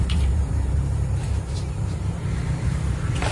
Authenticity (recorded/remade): remade